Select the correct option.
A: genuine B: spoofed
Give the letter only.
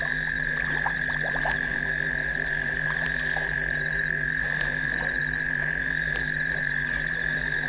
B